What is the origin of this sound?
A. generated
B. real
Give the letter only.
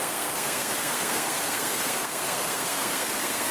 A